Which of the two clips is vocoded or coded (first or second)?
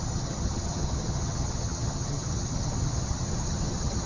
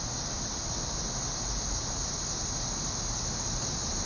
first